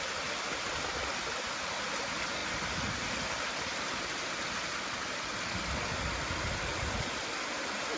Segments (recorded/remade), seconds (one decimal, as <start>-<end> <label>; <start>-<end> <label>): 0.0-8.0 recorded